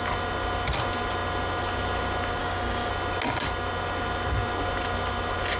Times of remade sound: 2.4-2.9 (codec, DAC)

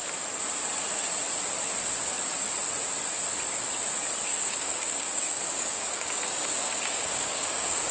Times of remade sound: 4.3-7.9 (codec, DAC)

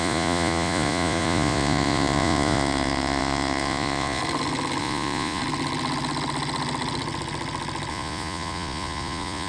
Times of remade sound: 0.0-4.2 (vocoder, Vocos); 4.8-5.4; 7.9-9.5

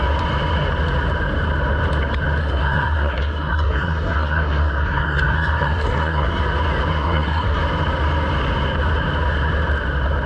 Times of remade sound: 2.4-6.4 (codec, SNAC); 6.9-7.6

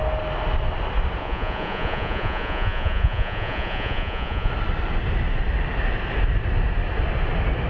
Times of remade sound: 1.2-4.5 (vocoder, Vocos)

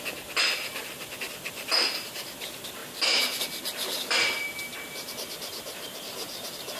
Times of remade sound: 1.7-2.3 (vocoder, BigVGAN v2)

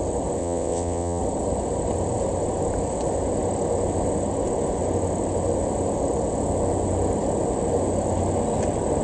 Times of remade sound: 0.4-1.2 (vocoder, WaveNeXt)